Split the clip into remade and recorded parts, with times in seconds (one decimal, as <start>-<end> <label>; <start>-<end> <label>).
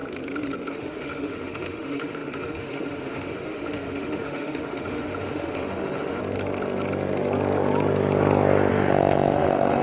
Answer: 0.0-0.7 recorded; 0.7-6.2 remade; 6.2-8.7 recorded; 8.7-9.8 remade